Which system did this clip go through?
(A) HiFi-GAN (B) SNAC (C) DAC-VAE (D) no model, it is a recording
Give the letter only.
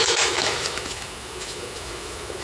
C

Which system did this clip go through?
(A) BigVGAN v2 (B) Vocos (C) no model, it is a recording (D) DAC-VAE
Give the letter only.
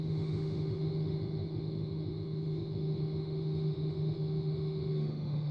D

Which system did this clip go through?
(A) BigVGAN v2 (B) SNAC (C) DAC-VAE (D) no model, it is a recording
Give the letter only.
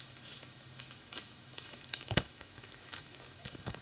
C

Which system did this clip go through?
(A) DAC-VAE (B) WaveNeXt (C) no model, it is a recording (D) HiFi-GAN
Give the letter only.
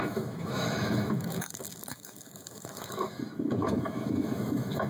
A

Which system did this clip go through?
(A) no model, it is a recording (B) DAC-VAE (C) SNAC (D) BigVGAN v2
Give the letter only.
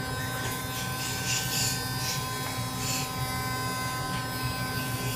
A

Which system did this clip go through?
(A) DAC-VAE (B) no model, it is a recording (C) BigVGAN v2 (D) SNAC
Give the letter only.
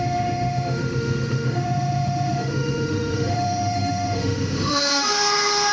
A